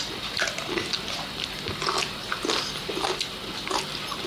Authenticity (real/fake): real